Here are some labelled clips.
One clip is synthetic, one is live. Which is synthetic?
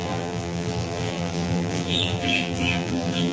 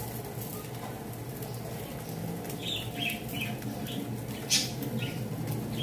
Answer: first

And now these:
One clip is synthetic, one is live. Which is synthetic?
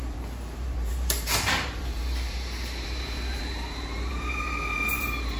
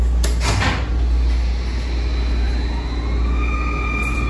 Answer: first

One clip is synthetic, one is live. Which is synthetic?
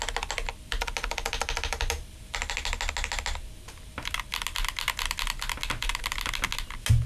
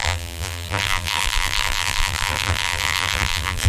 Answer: second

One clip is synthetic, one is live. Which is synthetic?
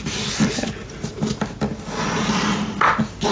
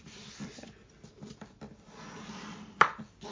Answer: second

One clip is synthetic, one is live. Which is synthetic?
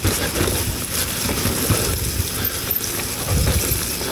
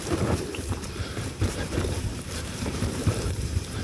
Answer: second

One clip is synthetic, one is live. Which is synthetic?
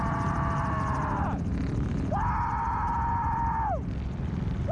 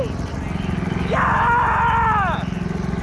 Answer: first